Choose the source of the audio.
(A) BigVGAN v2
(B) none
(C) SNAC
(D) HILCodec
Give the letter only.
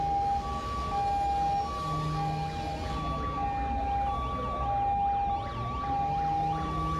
B